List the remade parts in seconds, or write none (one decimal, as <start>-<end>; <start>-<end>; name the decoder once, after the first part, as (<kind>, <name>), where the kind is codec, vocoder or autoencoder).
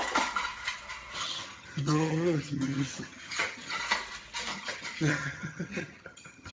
1.2-3.8 (vocoder, HiFi-GAN); 4.5-6.5